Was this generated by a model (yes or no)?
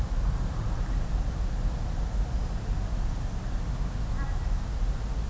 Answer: no